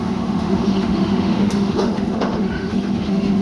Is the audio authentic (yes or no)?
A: no